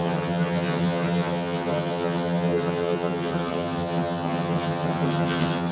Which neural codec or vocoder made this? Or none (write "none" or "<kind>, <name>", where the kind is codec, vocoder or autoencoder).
vocoder, HiFi-GAN